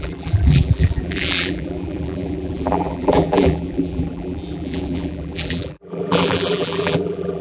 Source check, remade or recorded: remade